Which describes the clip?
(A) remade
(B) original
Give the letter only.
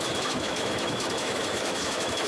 A